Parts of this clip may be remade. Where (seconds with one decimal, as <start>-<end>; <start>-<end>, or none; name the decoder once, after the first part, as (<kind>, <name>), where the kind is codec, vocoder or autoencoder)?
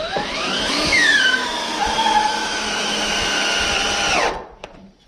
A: 0.0-3.1 (autoencoder, DAC-VAE)